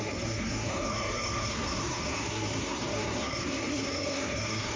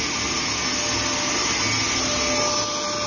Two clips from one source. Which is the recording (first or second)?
second